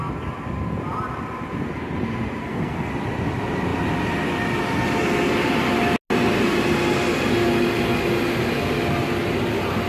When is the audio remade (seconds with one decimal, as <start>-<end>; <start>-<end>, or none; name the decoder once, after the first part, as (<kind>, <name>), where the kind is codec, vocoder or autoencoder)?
2.4-2.9 (codec, SNAC)